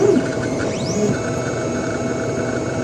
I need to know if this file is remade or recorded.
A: remade